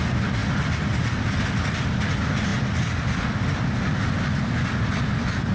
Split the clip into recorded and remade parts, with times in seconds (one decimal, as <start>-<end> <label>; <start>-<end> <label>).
0.0-5.5 recorded